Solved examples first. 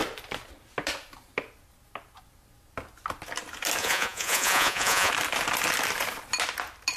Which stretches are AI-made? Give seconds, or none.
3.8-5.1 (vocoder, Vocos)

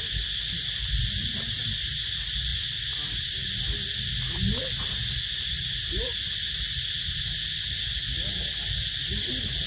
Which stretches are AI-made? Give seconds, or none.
none

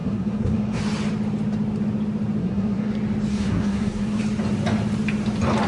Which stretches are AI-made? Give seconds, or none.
0.0-0.8 (codec, SNAC); 2.4-2.9; 3.3-4.2

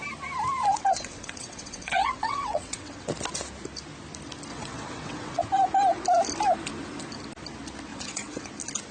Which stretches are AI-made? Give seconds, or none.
0.7-3.1 (vocoder, WaveNeXt); 4.5-5.4; 7.9-8.5

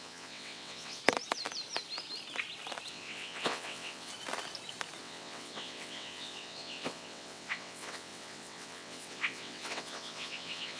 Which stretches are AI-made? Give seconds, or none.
0.0-1.0 (vocoder, WaveNeXt); 2.9-4.1; 5.0-10.8

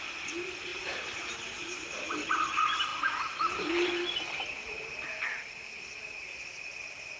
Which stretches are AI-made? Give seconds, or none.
0.7-1.8 (vocoder, BigVGAN v2)

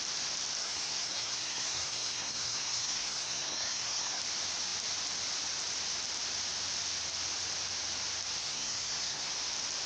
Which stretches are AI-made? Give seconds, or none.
0.6-4.2 (codec, SNAC); 8.4-9.3

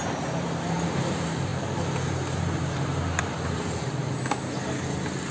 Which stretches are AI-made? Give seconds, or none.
none